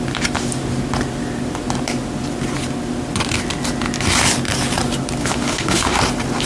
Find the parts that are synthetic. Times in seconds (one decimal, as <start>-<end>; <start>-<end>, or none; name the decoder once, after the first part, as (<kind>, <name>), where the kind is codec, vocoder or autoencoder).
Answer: 5.2-6.0 (autoencoder, DAC-VAE)